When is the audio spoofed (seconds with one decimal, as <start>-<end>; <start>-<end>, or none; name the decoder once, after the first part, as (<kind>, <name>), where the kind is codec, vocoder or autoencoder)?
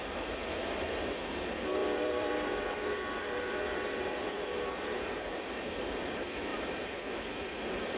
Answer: 1.8-6.1 (vocoder, BigVGAN v2)